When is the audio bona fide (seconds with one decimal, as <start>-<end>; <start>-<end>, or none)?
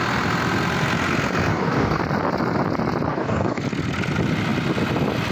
0.0-1.5; 2.0-3.1; 3.6-5.3